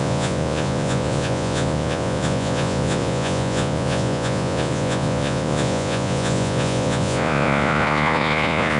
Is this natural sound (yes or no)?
no